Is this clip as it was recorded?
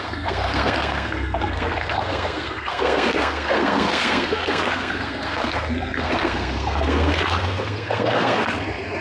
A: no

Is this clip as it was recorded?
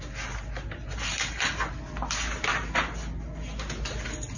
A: yes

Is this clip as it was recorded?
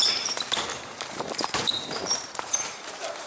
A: no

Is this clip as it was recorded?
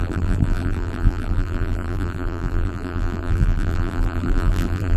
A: no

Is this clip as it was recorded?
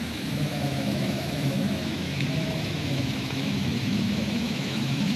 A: no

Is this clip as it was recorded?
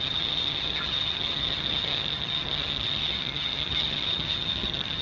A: no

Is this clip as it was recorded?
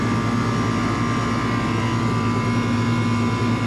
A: yes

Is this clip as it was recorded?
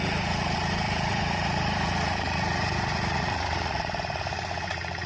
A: no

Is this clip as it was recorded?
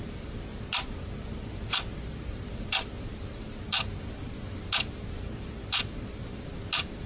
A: no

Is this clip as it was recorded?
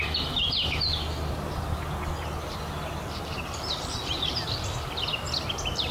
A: yes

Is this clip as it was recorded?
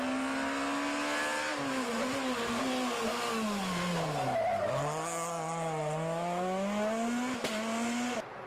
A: yes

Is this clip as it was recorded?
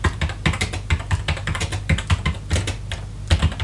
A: yes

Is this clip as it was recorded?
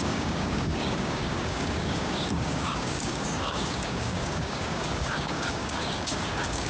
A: no